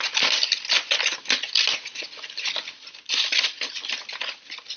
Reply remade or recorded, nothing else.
recorded